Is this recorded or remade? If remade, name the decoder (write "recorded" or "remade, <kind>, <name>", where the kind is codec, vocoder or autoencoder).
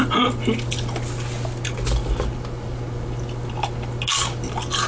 recorded